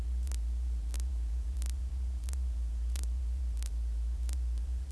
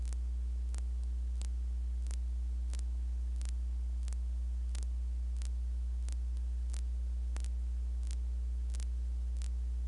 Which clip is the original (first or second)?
second